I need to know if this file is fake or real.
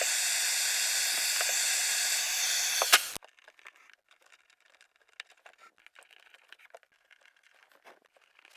real